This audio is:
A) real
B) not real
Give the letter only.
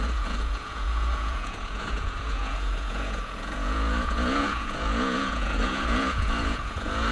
B